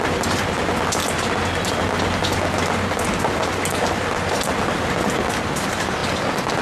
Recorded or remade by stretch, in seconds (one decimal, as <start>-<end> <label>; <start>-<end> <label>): 0.0-6.6 recorded